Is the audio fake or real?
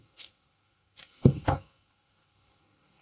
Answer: fake